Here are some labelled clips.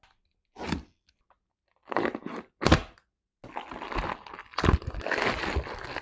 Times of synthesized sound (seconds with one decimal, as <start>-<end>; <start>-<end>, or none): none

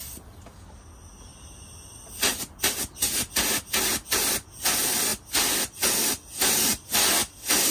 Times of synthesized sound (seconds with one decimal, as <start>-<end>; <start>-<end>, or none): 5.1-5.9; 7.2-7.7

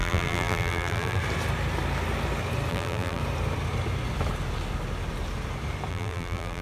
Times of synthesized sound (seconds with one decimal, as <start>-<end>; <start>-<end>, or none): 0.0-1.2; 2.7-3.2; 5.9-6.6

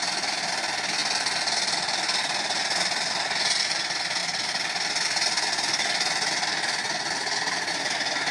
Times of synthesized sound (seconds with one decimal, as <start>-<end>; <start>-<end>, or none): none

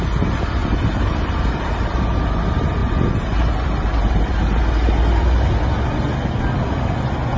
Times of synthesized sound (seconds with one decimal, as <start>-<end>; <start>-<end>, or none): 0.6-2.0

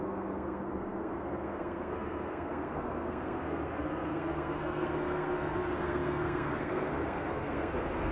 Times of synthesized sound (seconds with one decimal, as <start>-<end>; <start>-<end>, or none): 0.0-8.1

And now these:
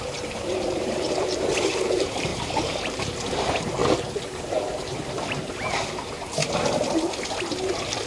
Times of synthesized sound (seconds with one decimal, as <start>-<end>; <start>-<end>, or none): 0.0-3.8; 4.3-6.4